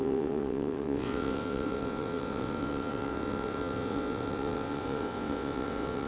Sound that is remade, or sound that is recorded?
remade